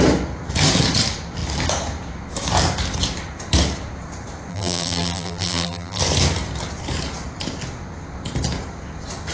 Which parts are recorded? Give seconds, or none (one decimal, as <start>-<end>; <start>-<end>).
0.0-4.5; 6.0-9.3